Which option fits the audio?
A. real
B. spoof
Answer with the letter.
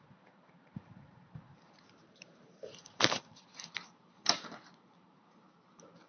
B